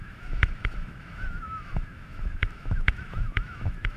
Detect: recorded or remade remade